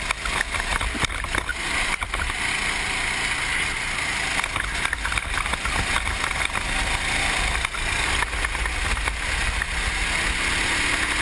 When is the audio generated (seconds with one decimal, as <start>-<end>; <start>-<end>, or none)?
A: 1.5-2.5